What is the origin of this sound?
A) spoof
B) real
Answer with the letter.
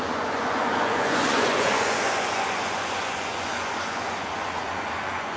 A